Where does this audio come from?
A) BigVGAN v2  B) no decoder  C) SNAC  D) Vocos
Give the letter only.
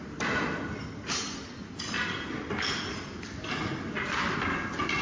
B